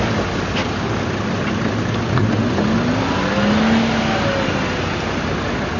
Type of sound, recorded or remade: recorded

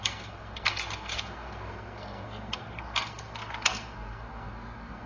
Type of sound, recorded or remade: remade